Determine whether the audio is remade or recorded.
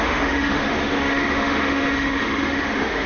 remade